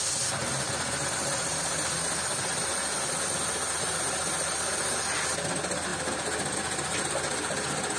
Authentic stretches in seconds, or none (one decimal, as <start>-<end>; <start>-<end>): 0.0-8.0

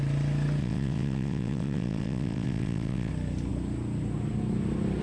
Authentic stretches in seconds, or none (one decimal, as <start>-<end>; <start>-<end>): 0.0-0.6; 3.1-5.0

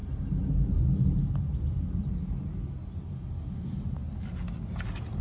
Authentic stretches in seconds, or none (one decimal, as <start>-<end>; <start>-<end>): 0.0-5.2

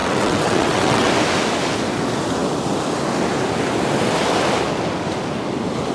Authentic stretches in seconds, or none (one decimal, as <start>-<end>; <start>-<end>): 1.1-5.9